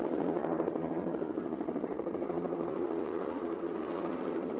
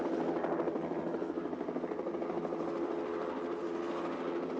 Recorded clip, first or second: second